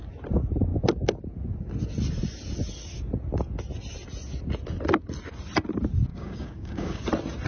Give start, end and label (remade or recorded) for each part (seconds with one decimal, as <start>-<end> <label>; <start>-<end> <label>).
0.0-6.1 recorded; 6.1-7.0 remade; 7.0-7.5 recorded